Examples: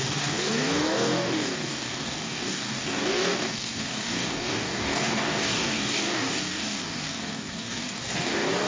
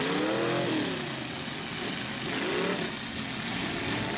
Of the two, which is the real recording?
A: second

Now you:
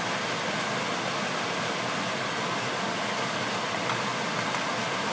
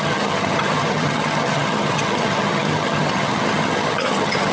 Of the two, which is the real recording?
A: first